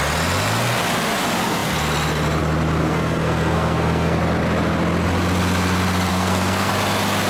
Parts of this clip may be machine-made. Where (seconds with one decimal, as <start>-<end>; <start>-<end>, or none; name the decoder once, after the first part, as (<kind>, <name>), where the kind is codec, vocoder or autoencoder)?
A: 2.8-4.2 (codec, SNAC); 6.1-6.7